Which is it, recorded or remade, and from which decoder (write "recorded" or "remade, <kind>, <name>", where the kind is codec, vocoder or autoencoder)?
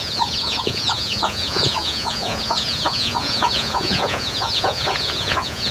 remade, vocoder, Vocos